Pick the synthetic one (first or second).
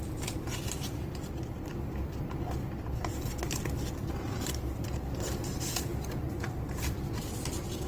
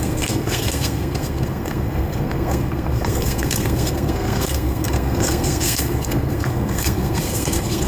second